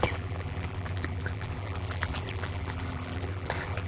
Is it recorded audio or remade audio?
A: remade